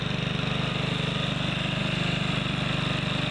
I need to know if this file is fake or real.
real